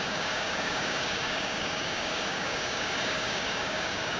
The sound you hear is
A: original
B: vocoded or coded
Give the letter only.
B